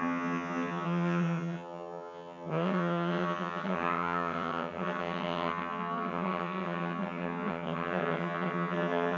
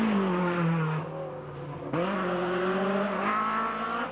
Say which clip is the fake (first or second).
first